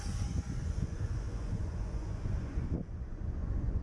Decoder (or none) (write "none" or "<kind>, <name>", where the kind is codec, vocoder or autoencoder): vocoder, Vocos